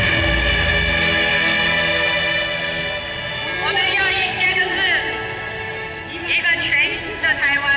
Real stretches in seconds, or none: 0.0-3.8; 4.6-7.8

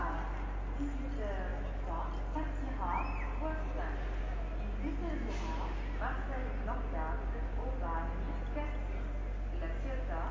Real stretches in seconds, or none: 0.0-10.3

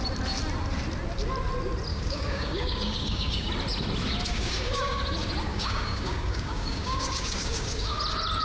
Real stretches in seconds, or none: 0.0-1.9; 3.5-4.3; 5.0-5.5; 8.0-8.4

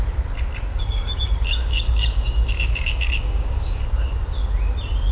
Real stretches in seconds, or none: 0.0-0.7; 3.8-5.1

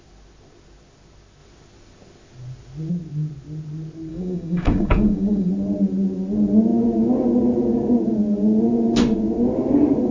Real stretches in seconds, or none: 0.0-4.1; 5.5-10.1

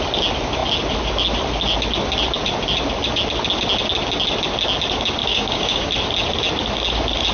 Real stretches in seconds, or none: 0.0-5.2; 5.9-7.3

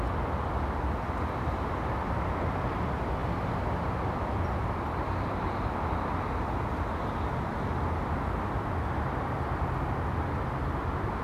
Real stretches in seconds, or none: 0.0-11.2

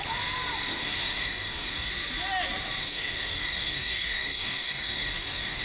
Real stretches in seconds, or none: 0.0-0.8; 1.9-2.8